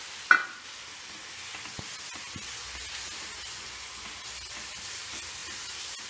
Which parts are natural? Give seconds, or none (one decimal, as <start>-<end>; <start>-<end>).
0.0-3.5; 4.1-6.1